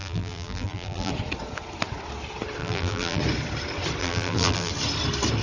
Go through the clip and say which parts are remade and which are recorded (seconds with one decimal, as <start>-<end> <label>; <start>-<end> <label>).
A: 0.0-1.1 remade; 1.1-2.6 recorded; 2.6-3.2 remade; 3.2-4.0 recorded; 4.0-4.7 remade; 4.7-5.4 recorded